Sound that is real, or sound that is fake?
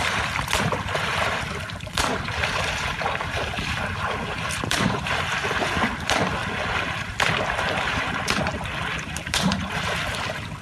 fake